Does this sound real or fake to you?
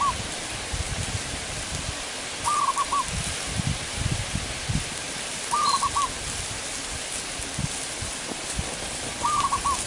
real